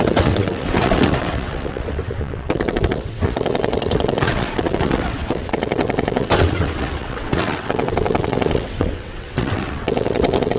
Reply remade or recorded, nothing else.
remade